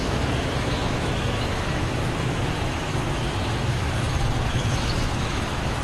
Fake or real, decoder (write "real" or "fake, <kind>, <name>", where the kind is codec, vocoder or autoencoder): fake, autoencoder, DAC-VAE